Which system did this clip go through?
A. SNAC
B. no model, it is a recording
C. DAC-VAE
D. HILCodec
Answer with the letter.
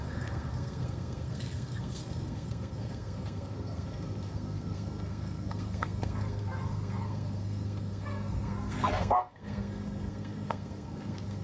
A